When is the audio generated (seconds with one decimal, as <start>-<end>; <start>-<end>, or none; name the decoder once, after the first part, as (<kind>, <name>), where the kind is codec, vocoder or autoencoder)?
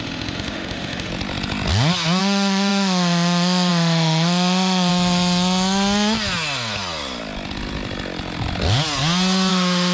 0.0-1.1 (autoencoder, DAC-VAE); 2.2-4.9; 9.5-9.9